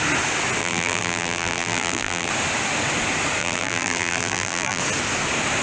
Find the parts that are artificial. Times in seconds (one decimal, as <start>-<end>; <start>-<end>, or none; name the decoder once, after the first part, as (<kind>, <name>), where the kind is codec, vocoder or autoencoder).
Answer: 0.6-2.3 (vocoder, BigVGAN v2); 3.4-4.8

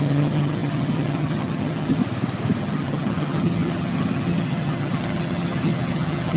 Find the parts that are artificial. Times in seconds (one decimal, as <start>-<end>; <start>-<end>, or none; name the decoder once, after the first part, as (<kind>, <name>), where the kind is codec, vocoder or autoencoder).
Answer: 0.0-2.0 (vocoder, HiFi-GAN); 2.6-6.4

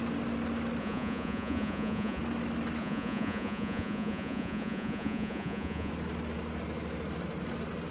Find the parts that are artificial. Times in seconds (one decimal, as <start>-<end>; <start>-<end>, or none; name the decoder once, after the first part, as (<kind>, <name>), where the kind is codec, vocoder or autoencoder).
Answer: 0.8-2.2 (vocoder, Vocos); 2.8-5.9

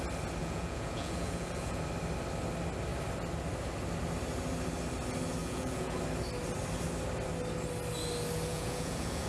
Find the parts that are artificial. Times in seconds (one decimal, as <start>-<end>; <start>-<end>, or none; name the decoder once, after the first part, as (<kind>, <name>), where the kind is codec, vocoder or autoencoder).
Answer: 0.4-1.8 (vocoder, Vocos); 5.4-6.0; 8.5-9.3

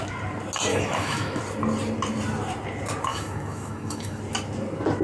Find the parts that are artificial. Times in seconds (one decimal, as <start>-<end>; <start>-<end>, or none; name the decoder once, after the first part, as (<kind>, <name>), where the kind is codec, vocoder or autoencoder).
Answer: 0.7-1.4 (autoencoder, DAC-VAE); 3.1-4.2

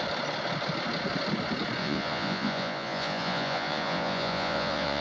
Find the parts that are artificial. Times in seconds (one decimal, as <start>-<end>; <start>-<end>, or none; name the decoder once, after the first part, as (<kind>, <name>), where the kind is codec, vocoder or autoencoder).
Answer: 1.8-5.0 (vocoder, Vocos)